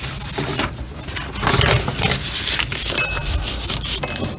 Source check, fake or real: real